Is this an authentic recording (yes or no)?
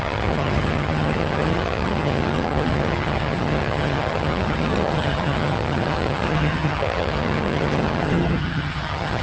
no